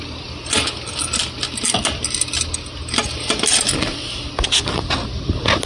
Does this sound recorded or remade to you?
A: recorded